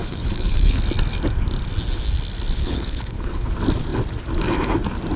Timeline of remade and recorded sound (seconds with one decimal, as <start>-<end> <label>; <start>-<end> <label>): 0.0-0.8 remade; 0.8-2.6 recorded; 2.6-3.5 remade; 3.5-5.2 recorded